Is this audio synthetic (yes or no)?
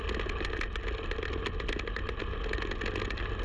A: no